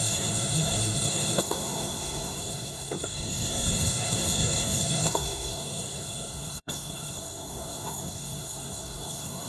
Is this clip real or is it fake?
fake